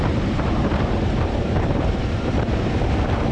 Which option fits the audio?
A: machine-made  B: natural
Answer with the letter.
A